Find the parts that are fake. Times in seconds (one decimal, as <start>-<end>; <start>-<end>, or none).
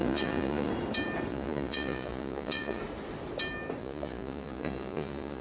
0.0-0.7; 1.3-2.8; 3.8-5.4